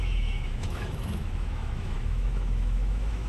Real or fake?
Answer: fake